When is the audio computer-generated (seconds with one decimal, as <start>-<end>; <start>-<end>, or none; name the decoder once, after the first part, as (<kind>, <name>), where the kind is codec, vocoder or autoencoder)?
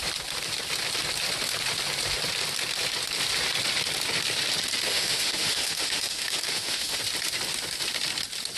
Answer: 4.9-7.0 (autoencoder, DAC-VAE)